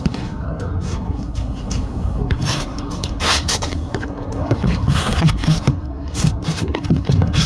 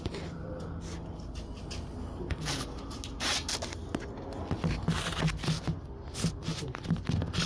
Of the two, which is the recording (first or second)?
second